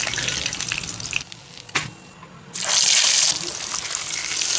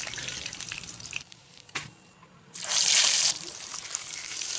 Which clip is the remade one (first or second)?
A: second